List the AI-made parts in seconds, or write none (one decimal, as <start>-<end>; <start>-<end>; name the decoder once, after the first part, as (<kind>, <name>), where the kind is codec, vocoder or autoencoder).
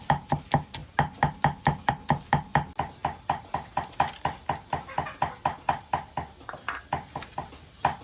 none